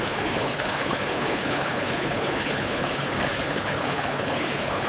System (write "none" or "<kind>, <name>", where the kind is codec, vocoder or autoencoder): codec, HILCodec